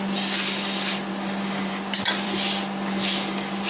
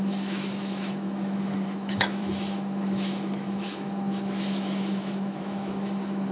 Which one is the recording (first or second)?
first